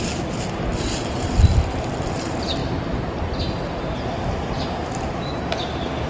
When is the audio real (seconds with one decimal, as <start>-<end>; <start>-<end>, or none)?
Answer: 2.6-6.1